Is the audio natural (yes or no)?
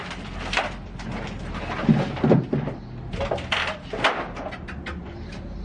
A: yes